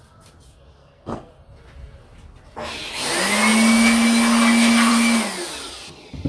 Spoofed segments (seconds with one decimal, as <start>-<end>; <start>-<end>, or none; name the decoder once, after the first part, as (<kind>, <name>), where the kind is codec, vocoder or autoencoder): 0.8-1.3 (codec, SNAC)